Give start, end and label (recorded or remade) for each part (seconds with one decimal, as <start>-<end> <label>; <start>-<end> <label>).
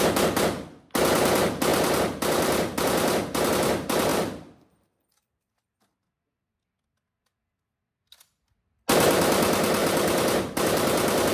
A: 0.0-1.7 recorded; 1.7-3.5 remade; 3.5-4.1 recorded; 4.1-5.9 remade; 5.9-9.8 recorded; 9.8-11.3 remade